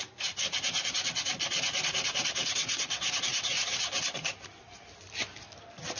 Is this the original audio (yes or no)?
yes